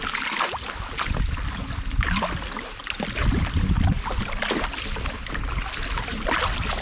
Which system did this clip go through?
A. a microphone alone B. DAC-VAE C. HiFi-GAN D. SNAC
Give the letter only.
A